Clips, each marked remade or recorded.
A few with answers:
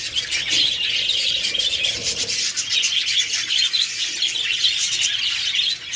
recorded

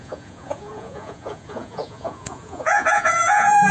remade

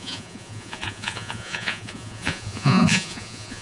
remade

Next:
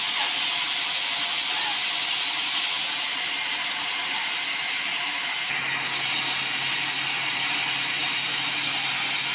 recorded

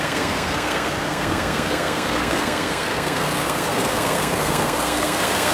remade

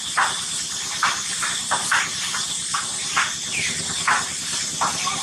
recorded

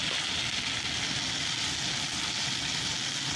recorded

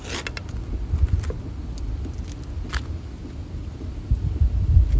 recorded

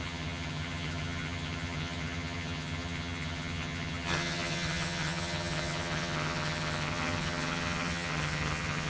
remade